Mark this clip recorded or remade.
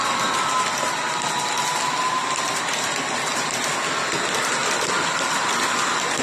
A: recorded